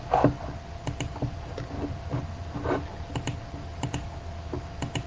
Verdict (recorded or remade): recorded